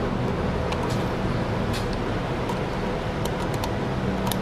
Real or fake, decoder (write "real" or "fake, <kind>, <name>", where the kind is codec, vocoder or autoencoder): real